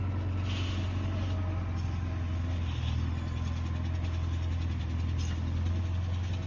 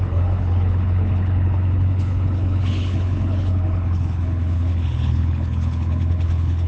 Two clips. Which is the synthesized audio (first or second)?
second